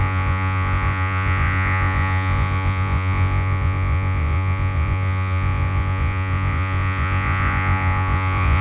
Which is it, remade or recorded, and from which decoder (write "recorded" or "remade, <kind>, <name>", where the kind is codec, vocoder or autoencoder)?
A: remade, vocoder, Vocos